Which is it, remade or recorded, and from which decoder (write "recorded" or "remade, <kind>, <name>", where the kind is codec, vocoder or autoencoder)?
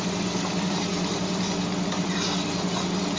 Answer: recorded